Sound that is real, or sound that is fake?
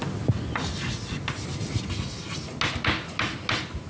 real